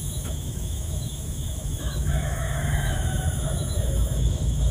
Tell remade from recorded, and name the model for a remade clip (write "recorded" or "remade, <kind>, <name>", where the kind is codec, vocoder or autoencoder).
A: remade, autoencoder, DAC-VAE